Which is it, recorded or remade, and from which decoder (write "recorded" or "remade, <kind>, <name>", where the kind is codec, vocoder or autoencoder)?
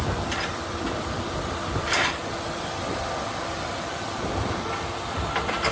remade, vocoder, BigVGAN v2